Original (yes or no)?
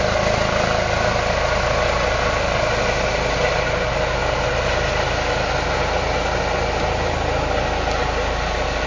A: yes